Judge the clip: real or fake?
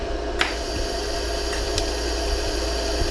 real